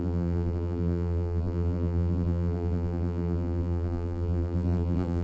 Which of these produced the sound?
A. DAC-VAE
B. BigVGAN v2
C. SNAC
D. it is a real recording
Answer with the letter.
B